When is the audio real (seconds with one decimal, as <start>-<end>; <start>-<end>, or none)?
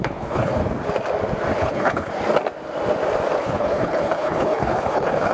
0.6-1.6; 2.1-3.4